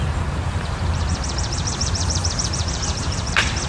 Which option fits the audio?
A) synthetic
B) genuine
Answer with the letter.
A